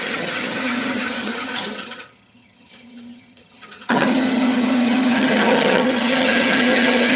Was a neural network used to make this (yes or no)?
yes